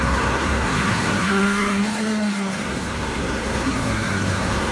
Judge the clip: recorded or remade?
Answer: remade